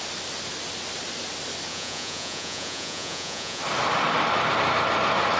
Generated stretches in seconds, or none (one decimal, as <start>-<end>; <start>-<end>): 1.7-3.6